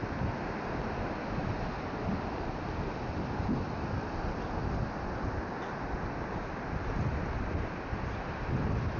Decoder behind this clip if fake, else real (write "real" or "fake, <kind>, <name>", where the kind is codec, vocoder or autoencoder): real